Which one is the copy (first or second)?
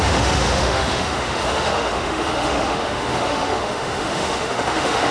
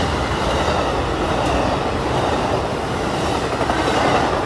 first